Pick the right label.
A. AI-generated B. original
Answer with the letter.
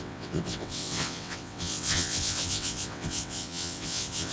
A